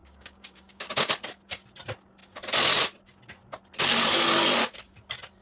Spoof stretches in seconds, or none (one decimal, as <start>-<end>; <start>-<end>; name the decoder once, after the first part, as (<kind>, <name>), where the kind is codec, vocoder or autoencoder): 0.0-1.1 (codec, DAC)